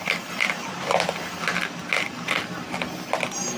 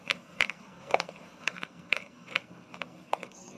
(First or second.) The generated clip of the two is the second